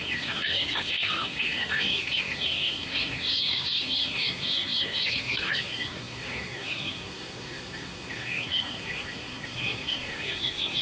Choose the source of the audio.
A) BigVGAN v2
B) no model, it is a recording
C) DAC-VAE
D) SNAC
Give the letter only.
D